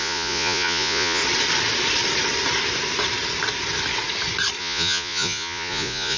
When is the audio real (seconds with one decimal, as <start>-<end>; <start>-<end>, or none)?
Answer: 1.2-4.6